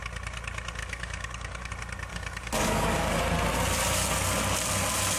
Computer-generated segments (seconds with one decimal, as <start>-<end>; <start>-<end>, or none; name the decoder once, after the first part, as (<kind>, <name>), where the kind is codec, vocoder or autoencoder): 0.8-1.7 (codec, DAC); 2.1-3.2